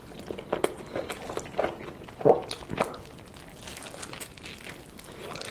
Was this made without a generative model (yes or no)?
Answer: yes